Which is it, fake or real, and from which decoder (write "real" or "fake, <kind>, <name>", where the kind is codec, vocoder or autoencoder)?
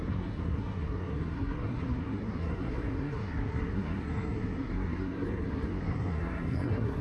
fake, codec, SNAC